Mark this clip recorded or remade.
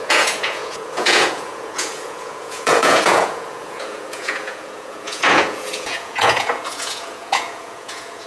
remade